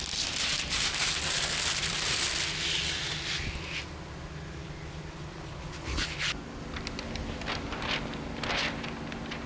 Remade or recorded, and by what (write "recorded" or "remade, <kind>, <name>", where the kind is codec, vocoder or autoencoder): recorded